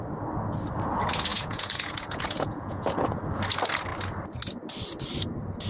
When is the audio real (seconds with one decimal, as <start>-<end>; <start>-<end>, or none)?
0.0-1.3; 3.2-5.7